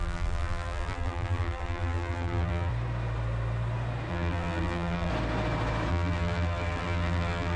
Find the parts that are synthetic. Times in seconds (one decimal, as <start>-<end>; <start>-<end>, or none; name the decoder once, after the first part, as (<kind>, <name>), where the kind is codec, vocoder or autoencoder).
0.0-2.7 (vocoder, BigVGAN v2); 4.1-5.1; 5.9-7.6